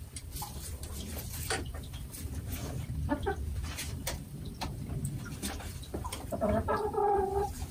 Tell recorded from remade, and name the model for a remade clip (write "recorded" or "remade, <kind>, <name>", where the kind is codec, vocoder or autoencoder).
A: remade, vocoder, BigVGAN v2